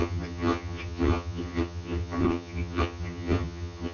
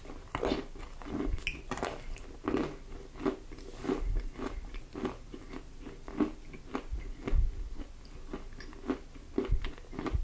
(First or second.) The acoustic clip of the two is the second